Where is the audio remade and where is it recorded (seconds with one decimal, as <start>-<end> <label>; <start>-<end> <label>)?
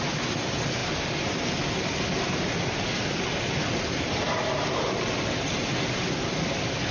0.0-6.9 recorded